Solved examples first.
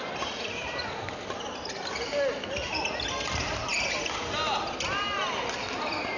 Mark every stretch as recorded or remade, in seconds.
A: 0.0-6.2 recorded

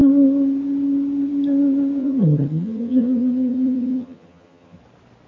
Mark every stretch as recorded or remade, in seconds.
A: 0.0-2.0 recorded; 2.0-4.8 remade; 4.8-5.3 recorded

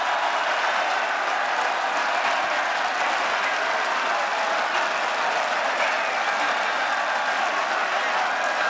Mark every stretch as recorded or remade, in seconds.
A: 0.0-8.7 recorded